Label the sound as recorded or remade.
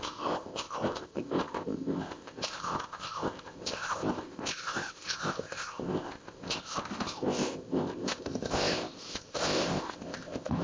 remade